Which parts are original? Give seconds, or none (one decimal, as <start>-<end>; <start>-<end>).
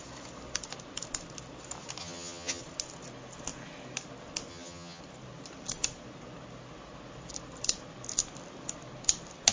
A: 0.0-2.0; 2.6-4.5; 5.0-9.5